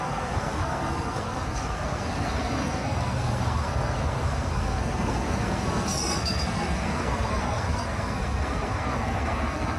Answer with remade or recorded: remade